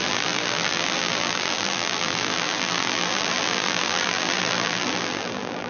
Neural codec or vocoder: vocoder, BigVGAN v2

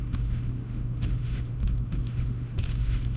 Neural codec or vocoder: autoencoder, DAC-VAE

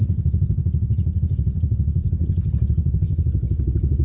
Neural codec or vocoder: vocoder, Vocos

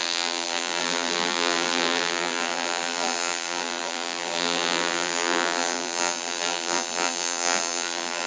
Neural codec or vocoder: vocoder, BigVGAN v2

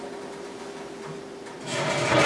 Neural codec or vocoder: none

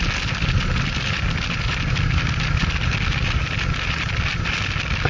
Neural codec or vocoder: none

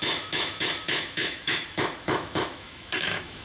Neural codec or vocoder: autoencoder, DAC-VAE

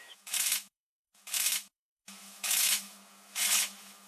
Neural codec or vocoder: autoencoder, DAC-VAE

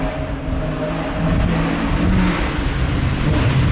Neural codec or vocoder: none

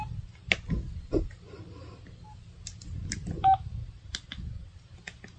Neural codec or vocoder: none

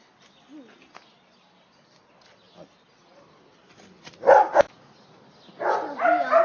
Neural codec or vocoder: none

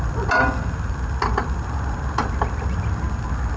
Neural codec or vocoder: none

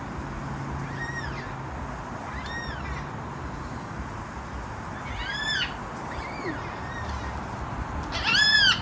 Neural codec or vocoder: none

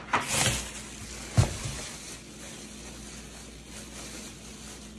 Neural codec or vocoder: none